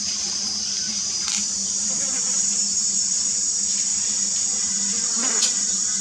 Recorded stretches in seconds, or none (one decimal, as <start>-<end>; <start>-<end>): 3.9-4.6